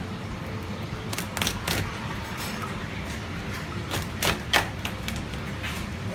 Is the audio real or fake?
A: real